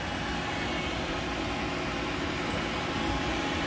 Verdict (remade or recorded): recorded